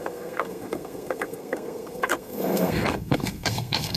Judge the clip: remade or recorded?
remade